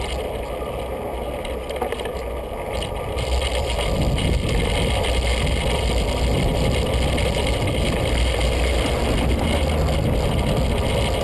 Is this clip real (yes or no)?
yes